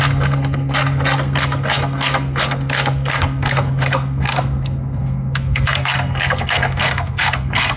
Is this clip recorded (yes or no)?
no